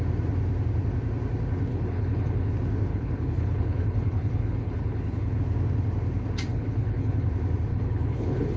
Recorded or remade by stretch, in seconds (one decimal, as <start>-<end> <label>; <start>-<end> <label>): 0.0-1.7 recorded; 1.7-2.5 remade; 2.5-2.9 recorded; 2.9-5.4 remade; 5.4-6.5 recorded; 6.5-7.3 remade; 7.3-7.7 recorded; 7.7-8.6 remade